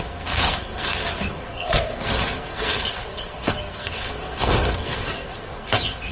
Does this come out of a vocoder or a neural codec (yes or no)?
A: yes